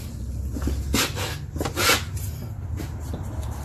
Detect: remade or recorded recorded